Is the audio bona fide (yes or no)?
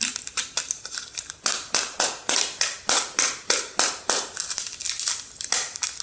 yes